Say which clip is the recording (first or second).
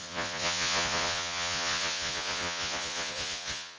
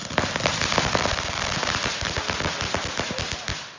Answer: second